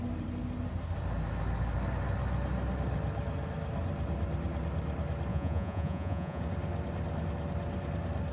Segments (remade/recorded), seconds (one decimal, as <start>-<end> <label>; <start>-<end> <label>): 0.0-5.3 recorded; 5.3-6.4 remade; 6.4-8.3 recorded